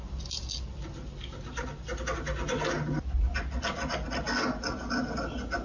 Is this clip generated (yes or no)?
no